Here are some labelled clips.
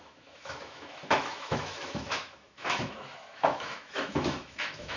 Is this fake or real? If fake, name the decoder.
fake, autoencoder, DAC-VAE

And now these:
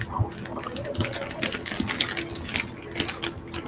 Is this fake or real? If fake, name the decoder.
real